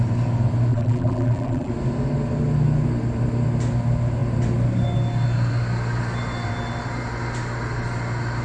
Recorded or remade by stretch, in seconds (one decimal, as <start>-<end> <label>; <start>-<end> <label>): 0.0-0.7 recorded; 0.7-1.7 remade; 1.7-8.4 recorded